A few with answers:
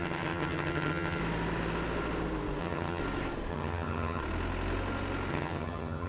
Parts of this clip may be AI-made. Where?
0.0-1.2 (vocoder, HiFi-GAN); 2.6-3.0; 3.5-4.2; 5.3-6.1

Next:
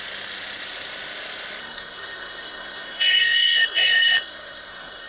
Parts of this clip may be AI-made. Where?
1.6-5.1 (codec, SNAC)